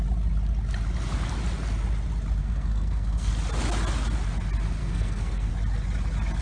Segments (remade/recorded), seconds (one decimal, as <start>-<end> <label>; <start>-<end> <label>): 0.0-2.4 recorded; 2.4-3.3 remade; 3.3-4.8 recorded; 4.8-5.5 remade; 5.5-6.4 recorded